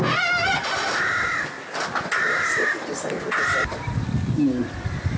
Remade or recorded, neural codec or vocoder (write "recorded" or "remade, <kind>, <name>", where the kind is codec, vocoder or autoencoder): recorded